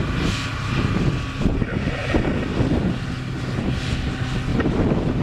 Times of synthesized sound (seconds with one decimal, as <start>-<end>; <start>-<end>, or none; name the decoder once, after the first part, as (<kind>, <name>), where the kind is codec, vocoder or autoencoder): 4.5-5.2 (vocoder, BigVGAN v2)